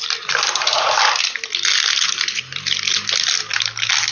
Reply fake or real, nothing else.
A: real